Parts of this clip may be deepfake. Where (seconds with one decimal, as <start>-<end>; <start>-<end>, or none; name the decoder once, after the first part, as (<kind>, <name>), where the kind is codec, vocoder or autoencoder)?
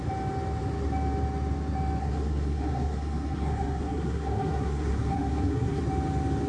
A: 2.0-5.8 (codec, SNAC)